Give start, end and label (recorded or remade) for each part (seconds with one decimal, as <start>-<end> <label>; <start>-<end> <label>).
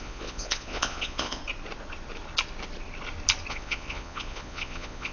0.0-1.4 remade; 1.4-3.5 recorded; 3.5-5.1 remade